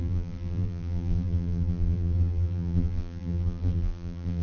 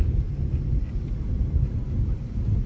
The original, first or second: second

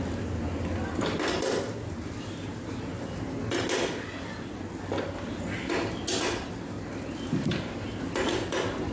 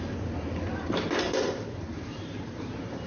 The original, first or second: first